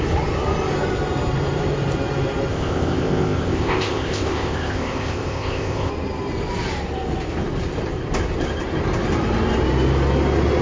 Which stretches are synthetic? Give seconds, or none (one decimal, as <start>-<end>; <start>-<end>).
2.5-5.9